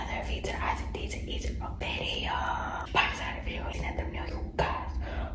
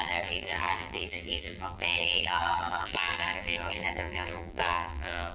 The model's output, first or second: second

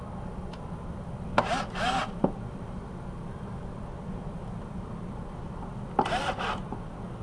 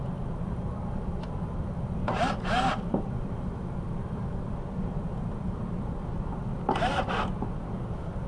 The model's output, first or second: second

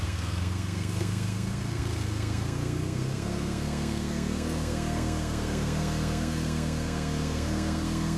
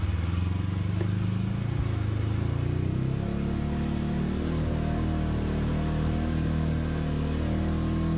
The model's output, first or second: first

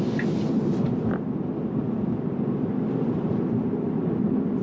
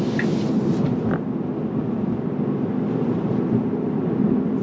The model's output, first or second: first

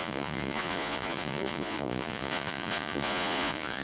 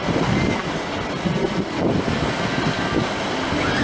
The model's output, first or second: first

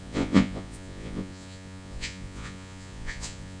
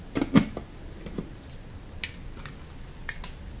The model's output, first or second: first